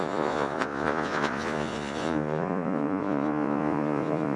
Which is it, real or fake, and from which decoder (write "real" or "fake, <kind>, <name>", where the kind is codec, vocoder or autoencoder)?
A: fake, vocoder, Vocos